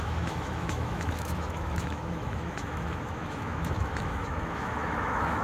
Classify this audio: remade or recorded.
remade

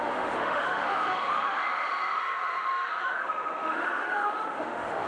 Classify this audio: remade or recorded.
remade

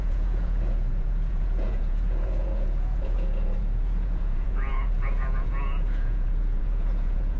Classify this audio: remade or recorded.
remade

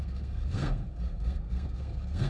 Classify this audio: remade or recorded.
remade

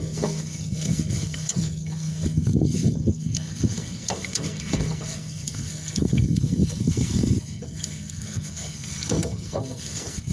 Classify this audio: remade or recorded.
remade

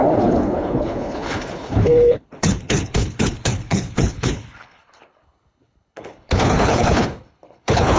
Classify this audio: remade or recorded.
remade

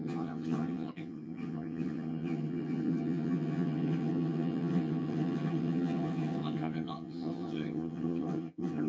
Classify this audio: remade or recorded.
remade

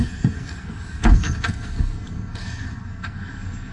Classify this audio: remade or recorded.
remade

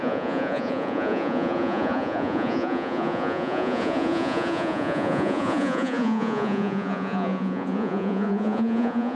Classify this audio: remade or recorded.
remade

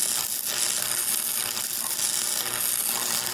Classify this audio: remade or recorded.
recorded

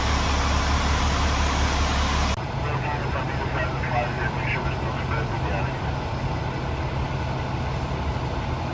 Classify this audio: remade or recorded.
recorded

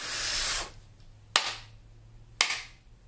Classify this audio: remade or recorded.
recorded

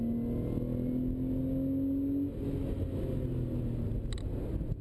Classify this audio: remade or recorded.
recorded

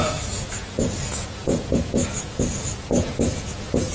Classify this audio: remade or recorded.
remade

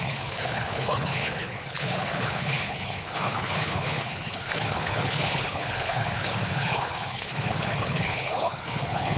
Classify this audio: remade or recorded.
remade